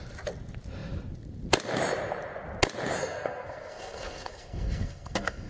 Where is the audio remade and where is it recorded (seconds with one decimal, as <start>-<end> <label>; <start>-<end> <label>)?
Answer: 0.0-3.0 recorded; 3.0-5.5 remade